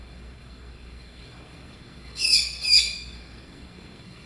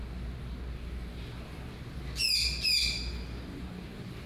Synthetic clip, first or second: first